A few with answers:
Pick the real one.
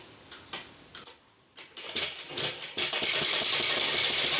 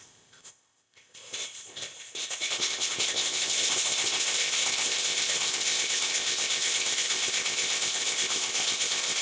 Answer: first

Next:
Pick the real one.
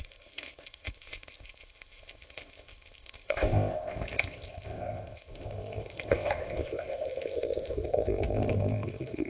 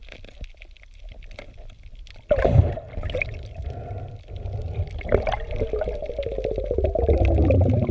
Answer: second